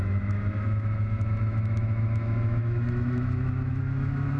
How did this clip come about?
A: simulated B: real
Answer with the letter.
A